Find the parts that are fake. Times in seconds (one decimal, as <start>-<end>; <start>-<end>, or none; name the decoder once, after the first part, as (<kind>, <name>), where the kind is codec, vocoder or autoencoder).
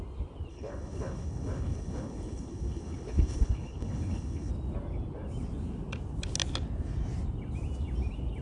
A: 0.5-4.5 (codec, HILCodec)